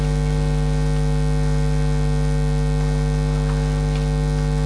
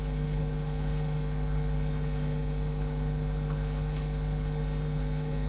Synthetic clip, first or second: second